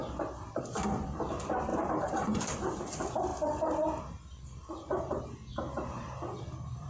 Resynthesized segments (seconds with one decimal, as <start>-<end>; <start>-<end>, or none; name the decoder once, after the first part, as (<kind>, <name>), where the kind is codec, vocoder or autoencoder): 1.7-2.8 (vocoder, BigVGAN v2); 5.5-6.9